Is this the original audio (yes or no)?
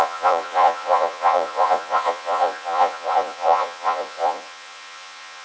no